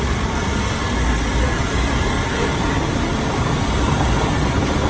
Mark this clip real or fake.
real